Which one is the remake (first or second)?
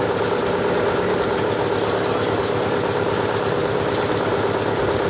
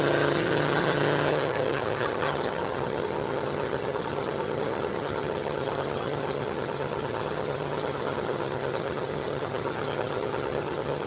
second